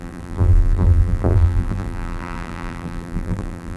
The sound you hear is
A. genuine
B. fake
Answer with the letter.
B